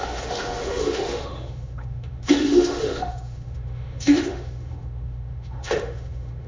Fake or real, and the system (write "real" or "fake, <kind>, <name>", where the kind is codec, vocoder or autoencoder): fake, autoencoder, DAC-VAE